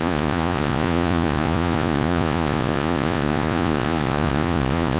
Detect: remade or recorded remade